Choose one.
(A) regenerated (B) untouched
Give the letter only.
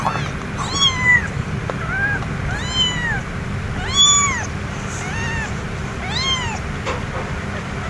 B